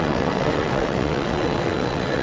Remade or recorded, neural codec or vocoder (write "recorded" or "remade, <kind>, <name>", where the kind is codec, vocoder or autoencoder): remade, vocoder, WaveNeXt